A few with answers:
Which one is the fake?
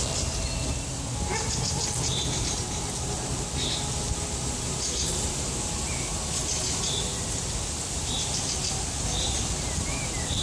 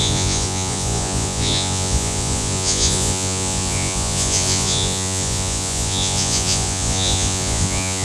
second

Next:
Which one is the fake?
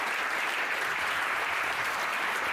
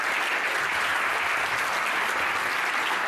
first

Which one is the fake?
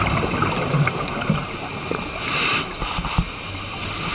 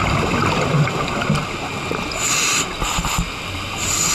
first